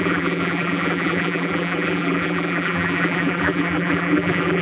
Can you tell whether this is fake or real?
fake